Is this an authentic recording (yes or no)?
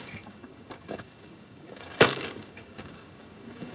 no